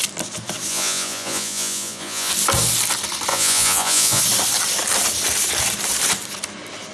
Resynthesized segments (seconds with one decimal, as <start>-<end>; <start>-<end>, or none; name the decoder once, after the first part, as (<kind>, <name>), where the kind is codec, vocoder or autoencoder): 0.7-2.3 (vocoder, Vocos); 3.3-4.2